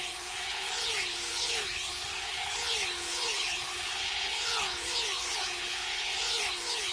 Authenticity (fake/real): fake